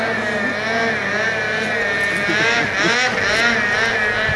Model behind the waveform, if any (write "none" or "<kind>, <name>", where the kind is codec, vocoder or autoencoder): none